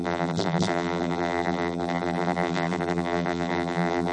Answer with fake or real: fake